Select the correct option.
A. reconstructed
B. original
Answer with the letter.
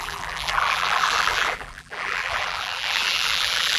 A